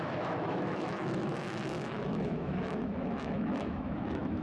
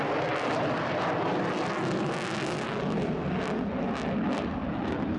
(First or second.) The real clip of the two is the second